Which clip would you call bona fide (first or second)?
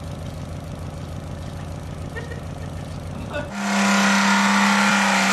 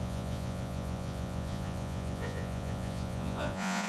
first